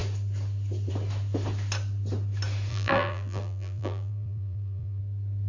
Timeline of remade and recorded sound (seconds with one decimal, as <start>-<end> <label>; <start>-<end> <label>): 0.0-2.7 recorded; 2.7-5.0 remade; 5.0-5.5 recorded